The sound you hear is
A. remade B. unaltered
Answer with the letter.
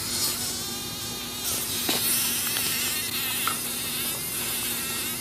B